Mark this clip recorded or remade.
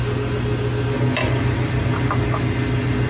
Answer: recorded